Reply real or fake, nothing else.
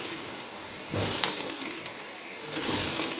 fake